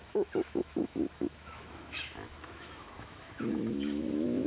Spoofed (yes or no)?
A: yes